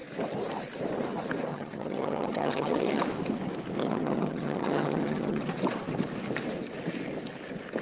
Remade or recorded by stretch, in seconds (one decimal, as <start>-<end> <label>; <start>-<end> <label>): 0.0-1.5 recorded; 1.5-3.0 remade; 3.0-3.8 recorded; 3.8-5.4 remade; 5.4-7.8 recorded